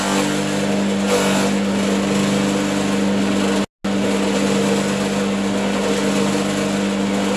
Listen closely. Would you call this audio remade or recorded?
recorded